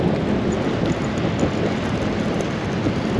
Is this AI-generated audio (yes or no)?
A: no